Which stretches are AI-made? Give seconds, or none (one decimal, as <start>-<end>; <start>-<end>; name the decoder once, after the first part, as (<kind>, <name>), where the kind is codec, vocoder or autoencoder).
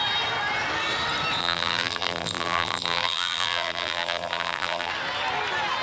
1.4-4.9 (vocoder, BigVGAN v2)